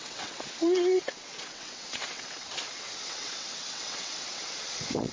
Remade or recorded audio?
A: remade